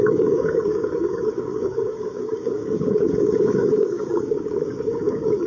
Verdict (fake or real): fake